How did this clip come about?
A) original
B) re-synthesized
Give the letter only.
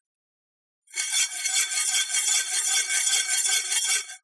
A